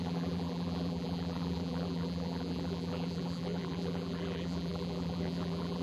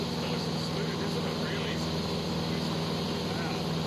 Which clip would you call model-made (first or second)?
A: first